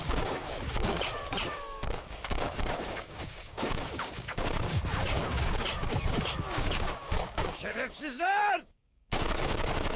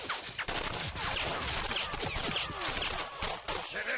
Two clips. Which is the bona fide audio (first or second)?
second